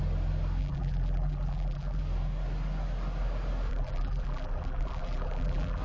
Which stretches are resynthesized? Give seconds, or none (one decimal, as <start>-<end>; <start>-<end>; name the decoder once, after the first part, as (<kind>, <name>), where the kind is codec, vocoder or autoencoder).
0.6-2.0 (vocoder, BigVGAN v2); 3.7-5.8